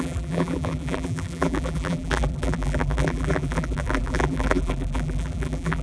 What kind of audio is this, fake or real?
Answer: fake